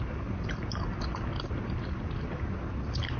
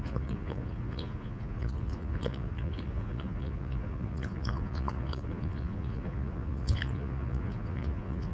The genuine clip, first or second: first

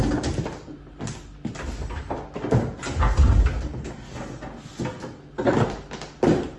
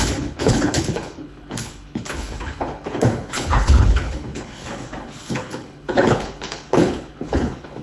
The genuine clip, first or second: first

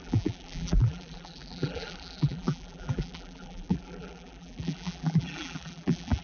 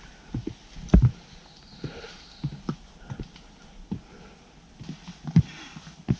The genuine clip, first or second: second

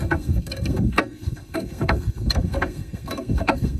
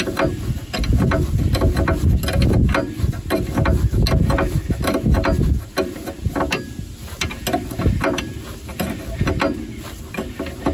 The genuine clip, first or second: second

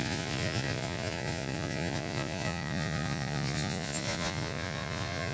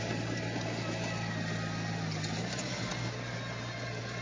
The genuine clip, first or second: second